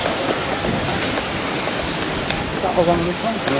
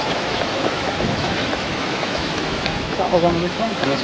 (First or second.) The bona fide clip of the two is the first